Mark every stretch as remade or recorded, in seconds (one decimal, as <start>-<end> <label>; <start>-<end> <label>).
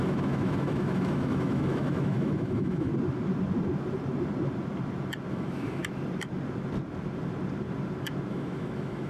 0.0-2.9 remade; 2.9-5.3 recorded; 5.3-5.8 remade; 5.8-8.3 recorded; 8.3-9.1 remade